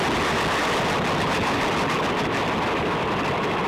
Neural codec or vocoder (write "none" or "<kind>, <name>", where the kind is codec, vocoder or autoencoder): none